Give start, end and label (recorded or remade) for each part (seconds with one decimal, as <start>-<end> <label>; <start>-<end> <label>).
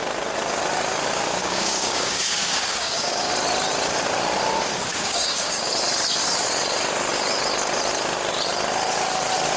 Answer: 0.0-1.4 recorded; 1.4-3.3 remade; 3.3-4.9 recorded; 4.9-5.7 remade; 5.7-9.6 recorded